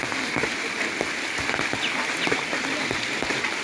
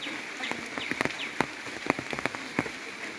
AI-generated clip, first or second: first